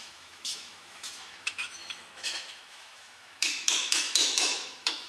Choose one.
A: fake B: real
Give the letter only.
A